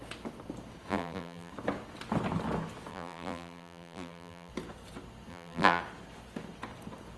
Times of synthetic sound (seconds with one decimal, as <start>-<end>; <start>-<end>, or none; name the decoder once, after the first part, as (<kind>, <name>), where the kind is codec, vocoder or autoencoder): 0.9-1.5 (vocoder, BigVGAN v2); 2.9-4.5; 5.3-5.8